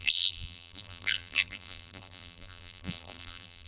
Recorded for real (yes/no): no